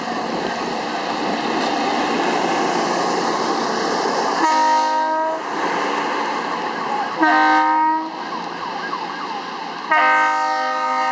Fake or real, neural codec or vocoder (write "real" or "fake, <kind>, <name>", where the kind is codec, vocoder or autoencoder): real